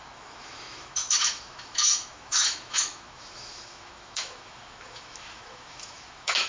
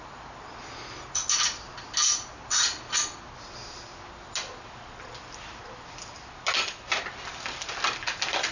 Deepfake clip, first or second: first